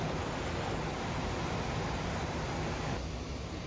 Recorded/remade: recorded